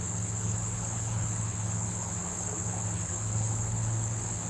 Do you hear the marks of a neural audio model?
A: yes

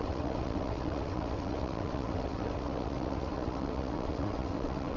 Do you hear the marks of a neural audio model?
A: yes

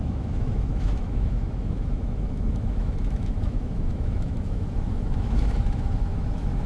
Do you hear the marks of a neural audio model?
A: yes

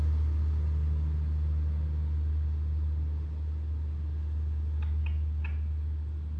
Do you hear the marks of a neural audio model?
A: no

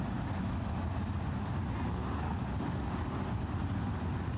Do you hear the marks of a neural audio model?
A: no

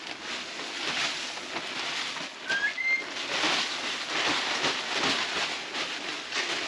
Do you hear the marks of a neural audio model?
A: no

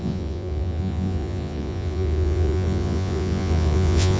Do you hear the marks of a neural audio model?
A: yes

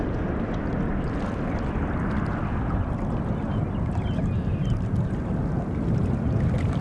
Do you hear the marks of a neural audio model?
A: no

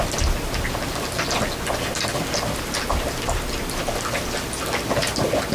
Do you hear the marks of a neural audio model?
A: no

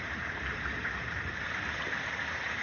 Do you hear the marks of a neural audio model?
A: yes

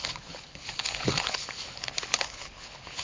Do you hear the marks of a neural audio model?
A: yes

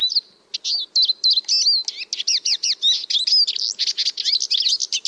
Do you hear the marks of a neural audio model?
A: no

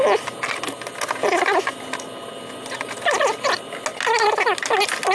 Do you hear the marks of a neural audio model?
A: no